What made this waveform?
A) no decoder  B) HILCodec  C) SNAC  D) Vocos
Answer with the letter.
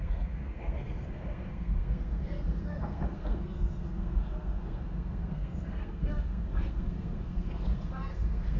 C